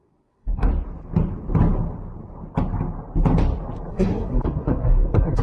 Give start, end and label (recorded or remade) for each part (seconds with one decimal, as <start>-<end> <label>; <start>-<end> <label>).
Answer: 0.0-0.7 remade; 0.7-3.9 recorded; 3.9-5.4 remade